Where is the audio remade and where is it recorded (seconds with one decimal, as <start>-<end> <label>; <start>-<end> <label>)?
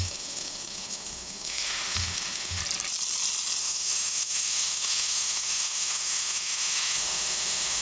0.0-2.6 remade; 2.6-3.6 recorded; 3.6-7.8 remade